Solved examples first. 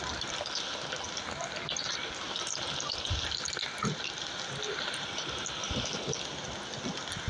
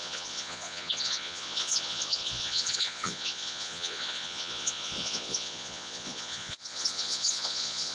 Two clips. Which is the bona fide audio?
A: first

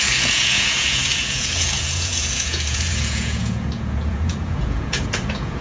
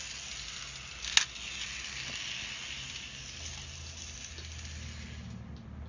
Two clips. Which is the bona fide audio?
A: second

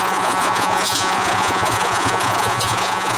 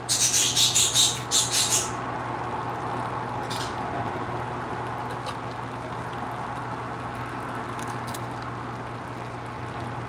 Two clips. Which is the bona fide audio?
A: second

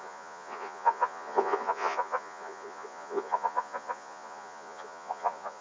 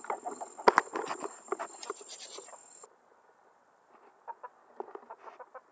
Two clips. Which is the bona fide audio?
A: second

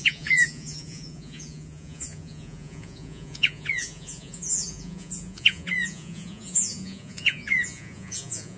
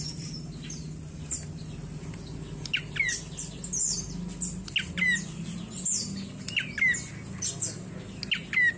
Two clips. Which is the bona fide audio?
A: second